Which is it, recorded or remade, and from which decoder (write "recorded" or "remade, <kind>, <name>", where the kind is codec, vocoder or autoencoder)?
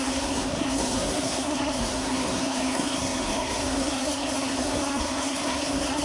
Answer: remade, codec, SNAC